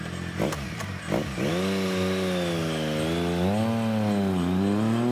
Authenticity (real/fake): real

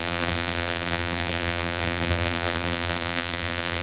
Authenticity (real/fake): fake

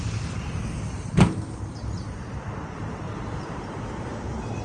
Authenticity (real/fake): real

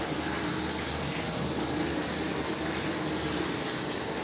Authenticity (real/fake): real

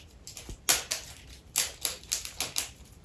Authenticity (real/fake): real